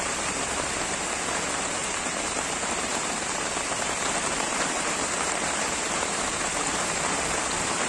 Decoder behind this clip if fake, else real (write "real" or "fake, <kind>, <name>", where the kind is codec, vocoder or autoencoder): fake, vocoder, BigVGAN v2